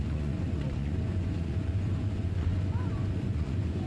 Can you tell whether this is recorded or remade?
remade